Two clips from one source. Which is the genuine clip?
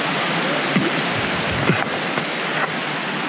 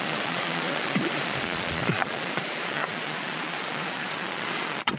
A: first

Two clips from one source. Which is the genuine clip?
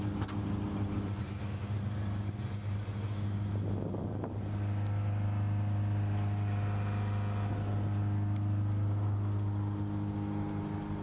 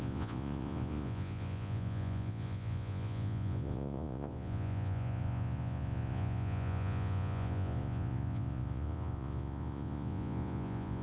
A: first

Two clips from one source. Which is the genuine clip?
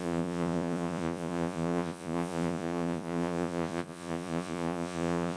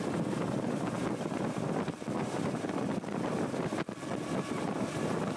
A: second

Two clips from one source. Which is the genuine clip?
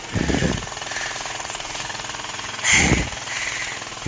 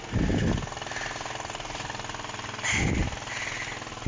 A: second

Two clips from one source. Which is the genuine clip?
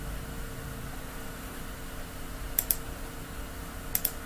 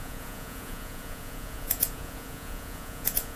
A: first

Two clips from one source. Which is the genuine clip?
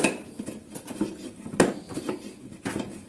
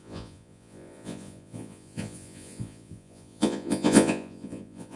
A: first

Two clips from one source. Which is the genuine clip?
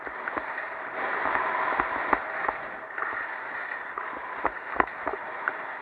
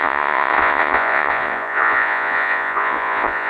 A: first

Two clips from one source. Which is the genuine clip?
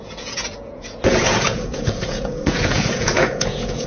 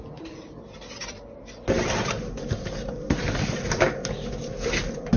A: second